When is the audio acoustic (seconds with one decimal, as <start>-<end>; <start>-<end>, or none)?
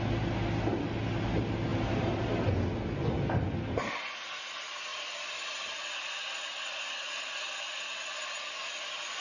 0.0-1.7; 2.5-9.2